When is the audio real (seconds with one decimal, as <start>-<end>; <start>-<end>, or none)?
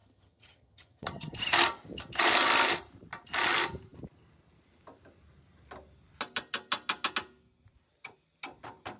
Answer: 1.3-9.0